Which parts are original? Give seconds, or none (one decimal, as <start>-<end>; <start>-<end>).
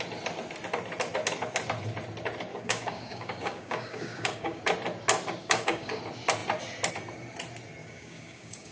0.0-2.5; 4.6-5.4; 6.0-7.8